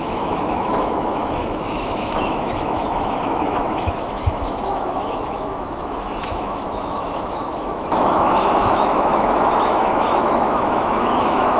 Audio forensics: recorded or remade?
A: remade